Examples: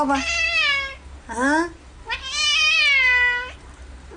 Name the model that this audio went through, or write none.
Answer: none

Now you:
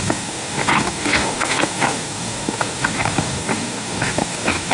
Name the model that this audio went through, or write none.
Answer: codec, DAC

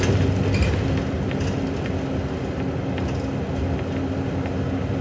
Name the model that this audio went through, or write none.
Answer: none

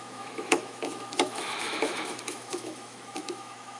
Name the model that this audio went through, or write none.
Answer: autoencoder, DAC-VAE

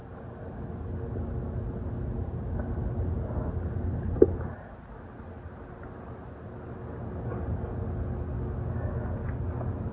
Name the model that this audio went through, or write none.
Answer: none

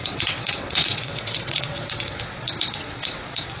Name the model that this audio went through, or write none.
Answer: vocoder, WaveNeXt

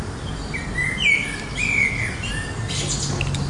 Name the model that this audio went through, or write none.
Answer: none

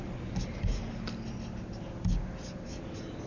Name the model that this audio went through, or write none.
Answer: none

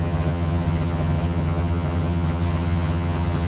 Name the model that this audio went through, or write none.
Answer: vocoder, HiFi-GAN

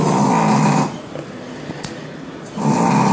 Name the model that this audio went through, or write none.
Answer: none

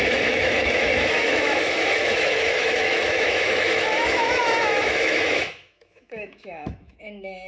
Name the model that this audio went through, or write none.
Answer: autoencoder, DAC-VAE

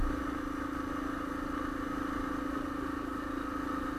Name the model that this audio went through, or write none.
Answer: none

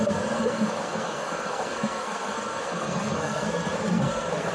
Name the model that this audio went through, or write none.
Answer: codec, SNAC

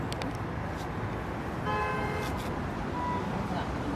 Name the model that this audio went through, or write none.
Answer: none